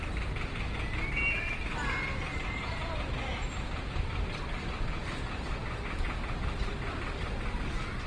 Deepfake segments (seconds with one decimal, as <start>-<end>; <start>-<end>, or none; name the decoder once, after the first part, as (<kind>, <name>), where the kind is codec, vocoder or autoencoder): none